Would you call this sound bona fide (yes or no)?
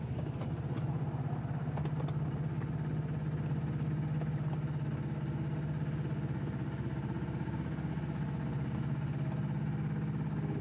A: yes